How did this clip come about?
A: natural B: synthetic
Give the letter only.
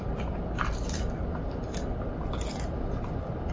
A